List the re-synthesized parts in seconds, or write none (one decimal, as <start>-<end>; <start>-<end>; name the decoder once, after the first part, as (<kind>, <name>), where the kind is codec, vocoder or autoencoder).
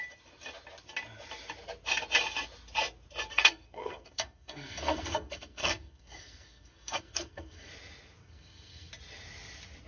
3.3-7.7 (codec, SNAC); 8.2-8.9